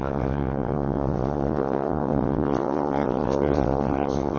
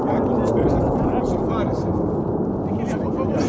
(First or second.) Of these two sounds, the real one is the second